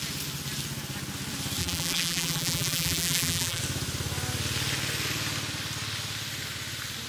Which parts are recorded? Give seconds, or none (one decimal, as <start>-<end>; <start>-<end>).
0.0-1.6; 3.6-7.1